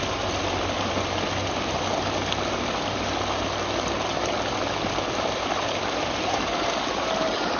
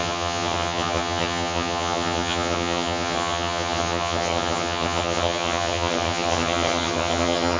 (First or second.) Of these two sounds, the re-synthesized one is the second